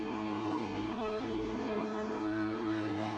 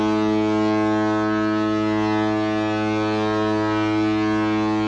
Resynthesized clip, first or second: first